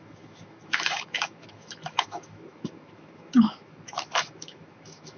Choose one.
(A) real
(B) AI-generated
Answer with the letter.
B